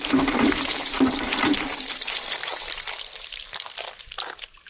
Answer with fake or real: fake